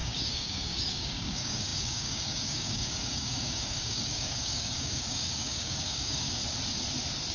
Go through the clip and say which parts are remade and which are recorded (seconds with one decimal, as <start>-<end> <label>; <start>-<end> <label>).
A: 0.0-6.4 remade; 6.4-7.3 recorded

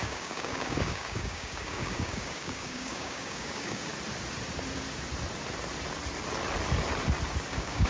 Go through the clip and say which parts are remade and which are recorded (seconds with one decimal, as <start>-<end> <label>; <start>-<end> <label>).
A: 0.0-3.9 remade; 3.9-7.5 recorded; 7.5-7.9 remade

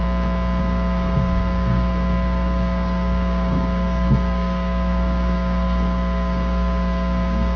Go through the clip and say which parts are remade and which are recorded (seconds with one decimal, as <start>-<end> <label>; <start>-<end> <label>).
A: 0.0-0.6 recorded; 0.6-7.6 remade

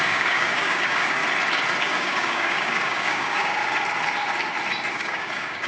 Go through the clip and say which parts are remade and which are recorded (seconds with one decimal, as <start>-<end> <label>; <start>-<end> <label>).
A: 0.0-1.2 remade; 1.2-1.8 recorded; 1.8-3.6 remade; 3.6-4.9 recorded; 4.9-5.7 remade

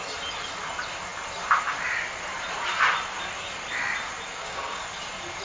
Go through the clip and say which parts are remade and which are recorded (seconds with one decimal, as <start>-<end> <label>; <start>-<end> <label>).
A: 0.0-4.3 recorded; 4.3-4.8 remade; 4.8-5.4 recorded

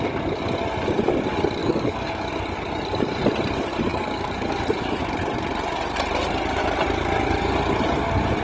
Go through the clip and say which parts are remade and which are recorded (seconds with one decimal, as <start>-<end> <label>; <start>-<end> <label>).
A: 0.0-1.6 recorded; 1.6-2.3 remade; 2.3-3.9 recorded; 3.9-4.7 remade; 4.7-8.4 recorded